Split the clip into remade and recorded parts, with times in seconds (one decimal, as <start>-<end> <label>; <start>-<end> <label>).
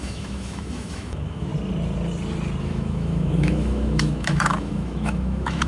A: 0.0-1.5 remade; 1.5-2.6 recorded; 2.6-5.7 remade